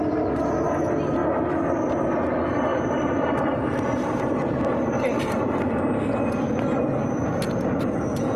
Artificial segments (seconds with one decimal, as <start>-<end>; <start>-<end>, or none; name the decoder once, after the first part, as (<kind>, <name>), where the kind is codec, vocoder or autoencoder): 2.7-6.3 (vocoder, BigVGAN v2)